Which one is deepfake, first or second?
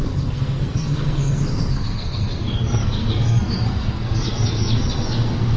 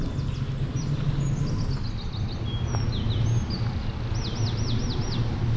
first